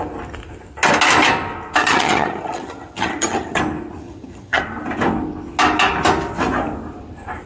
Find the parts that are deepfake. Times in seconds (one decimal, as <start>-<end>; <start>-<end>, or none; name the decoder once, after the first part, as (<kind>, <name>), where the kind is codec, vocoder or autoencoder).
1.8-3.6 (vocoder, HiFi-GAN); 4.0-4.6